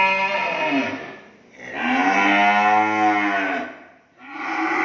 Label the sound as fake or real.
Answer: real